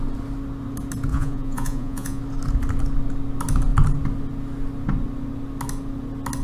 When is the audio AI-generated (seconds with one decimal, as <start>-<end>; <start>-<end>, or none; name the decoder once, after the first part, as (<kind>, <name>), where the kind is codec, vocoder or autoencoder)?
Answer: 1.1-2.2 (vocoder, Vocos)